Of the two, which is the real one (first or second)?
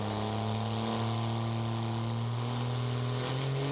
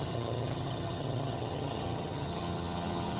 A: first